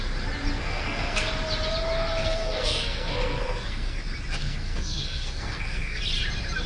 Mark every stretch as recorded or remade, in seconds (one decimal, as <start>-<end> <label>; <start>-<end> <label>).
0.0-0.6 recorded; 0.6-1.3 remade; 1.3-2.2 recorded; 2.2-4.0 remade; 4.0-4.4 recorded; 4.4-6.0 remade; 6.0-6.7 recorded